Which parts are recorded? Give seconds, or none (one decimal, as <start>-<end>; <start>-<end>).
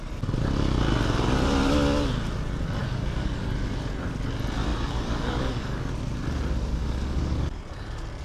0.0-2.8; 3.5-4.7; 5.9-6.7; 7.6-8.2